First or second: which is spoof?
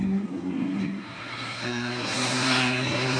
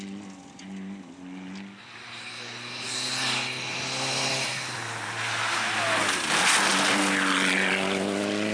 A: first